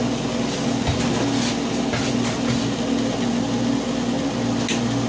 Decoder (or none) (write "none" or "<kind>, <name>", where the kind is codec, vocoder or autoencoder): none